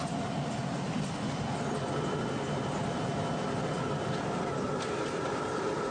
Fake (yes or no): no